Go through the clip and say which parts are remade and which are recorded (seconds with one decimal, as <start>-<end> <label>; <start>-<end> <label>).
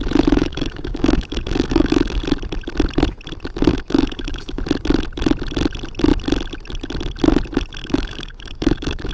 0.0-0.4 recorded; 0.4-2.2 remade; 2.2-3.7 recorded; 3.7-4.6 remade; 4.6-7.8 recorded; 7.8-9.1 remade